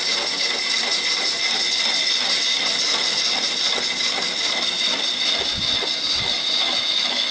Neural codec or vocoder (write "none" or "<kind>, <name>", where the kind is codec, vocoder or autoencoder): none